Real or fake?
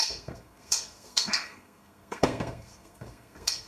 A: fake